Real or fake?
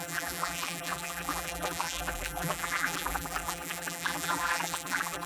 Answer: fake